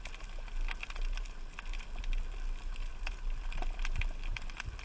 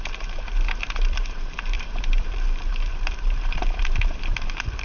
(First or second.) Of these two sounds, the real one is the first